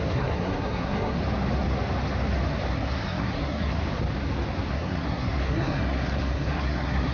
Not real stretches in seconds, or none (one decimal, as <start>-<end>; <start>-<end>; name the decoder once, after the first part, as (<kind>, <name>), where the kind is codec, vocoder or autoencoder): 0.0-1.2 (codec, SNAC); 2.7-3.8; 4.7-7.1